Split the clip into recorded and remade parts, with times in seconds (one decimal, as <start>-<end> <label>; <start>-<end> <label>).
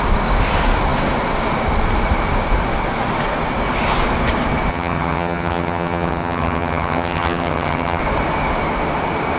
0.0-4.7 recorded; 4.7-8.0 remade; 8.0-9.4 recorded